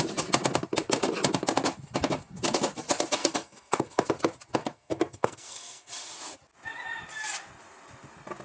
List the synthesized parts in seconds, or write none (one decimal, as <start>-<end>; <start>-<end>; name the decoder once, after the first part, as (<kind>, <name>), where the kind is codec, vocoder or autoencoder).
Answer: 3.2-4.1 (codec, SNAC); 4.6-5.9